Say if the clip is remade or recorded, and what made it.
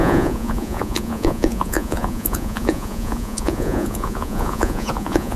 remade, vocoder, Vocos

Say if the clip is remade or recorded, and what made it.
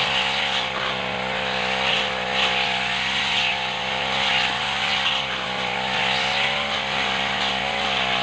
recorded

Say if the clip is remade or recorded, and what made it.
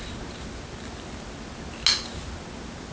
recorded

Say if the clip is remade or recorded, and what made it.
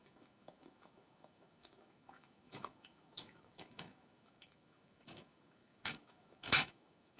remade, autoencoder, DAC-VAE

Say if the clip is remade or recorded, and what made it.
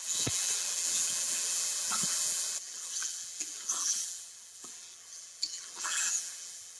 remade, vocoder, BigVGAN v2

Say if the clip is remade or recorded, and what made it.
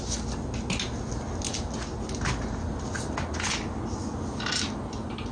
recorded